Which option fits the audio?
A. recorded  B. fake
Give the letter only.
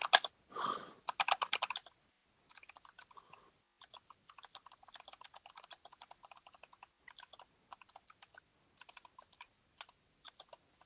A